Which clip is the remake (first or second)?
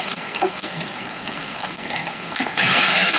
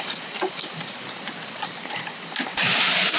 first